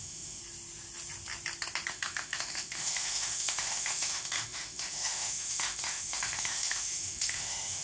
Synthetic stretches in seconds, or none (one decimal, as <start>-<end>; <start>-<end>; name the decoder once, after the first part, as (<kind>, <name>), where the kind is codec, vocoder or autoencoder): 0.0-0.4 (autoencoder, DAC-VAE); 1.9-7.8